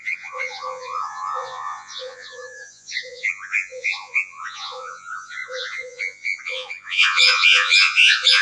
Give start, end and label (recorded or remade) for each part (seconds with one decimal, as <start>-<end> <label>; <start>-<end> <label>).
0.0-8.4 remade